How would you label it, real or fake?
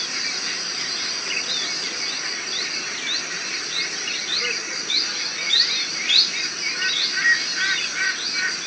real